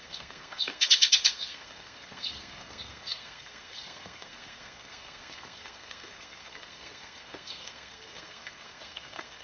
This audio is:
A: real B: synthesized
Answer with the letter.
B